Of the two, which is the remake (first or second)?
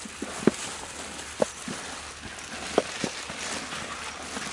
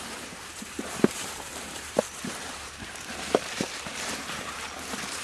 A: second